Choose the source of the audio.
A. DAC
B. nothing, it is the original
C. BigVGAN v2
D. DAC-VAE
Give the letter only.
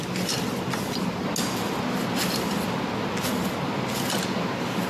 B